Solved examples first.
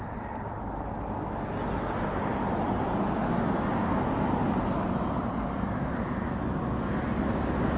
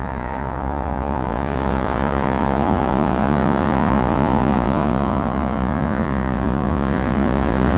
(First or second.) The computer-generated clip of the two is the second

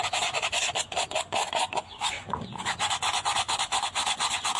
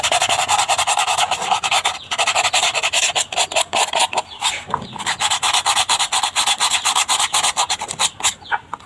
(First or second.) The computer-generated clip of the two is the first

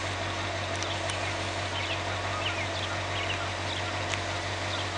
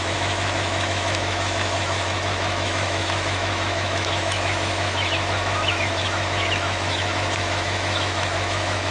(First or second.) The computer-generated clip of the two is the second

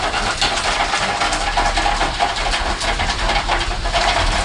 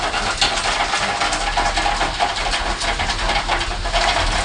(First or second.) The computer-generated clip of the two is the first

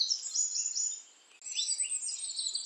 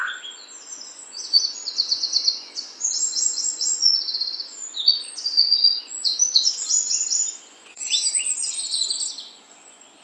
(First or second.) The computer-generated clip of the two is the second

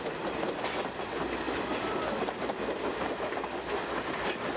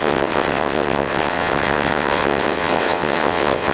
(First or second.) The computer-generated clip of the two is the second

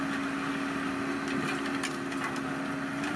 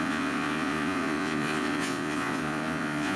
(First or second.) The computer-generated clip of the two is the second